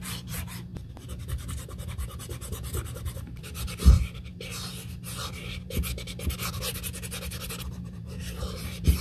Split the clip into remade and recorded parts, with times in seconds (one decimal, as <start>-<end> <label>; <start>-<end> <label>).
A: 0.0-4.3 remade; 4.3-7.5 recorded; 7.5-9.0 remade